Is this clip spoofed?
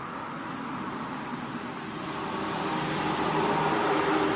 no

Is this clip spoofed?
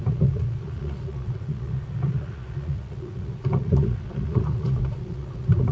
yes